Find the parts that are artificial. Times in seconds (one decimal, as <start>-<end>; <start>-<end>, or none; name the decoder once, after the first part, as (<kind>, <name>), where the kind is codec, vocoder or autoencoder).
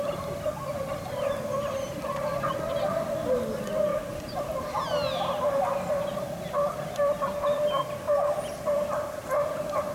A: 3.9-4.4 (vocoder, BigVGAN v2)